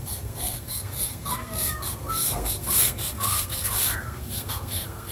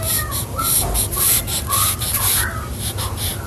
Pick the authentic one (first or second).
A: second